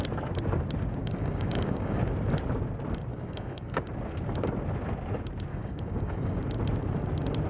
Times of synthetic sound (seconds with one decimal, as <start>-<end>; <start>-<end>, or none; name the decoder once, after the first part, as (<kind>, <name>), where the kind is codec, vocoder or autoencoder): 1.0-2.0 (codec, DAC); 3.1-3.8; 5.5-6.4